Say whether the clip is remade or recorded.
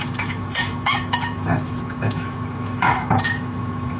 remade